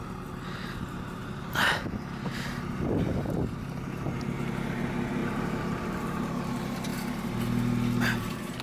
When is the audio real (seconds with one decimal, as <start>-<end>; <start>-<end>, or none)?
0.0-1.2; 4.8-5.2; 6.3-8.6